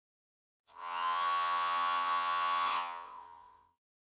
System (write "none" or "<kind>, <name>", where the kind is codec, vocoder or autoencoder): vocoder, WaveNeXt